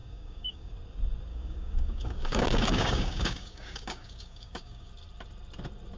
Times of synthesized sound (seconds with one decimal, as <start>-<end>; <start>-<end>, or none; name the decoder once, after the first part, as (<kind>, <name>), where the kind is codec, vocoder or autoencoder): 0.0-0.7 (codec, DAC); 1.3-4.9